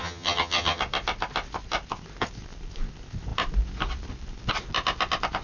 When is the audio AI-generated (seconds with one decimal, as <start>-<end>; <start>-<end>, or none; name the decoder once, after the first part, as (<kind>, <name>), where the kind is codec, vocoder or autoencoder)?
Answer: 0.0-0.8 (vocoder, HiFi-GAN)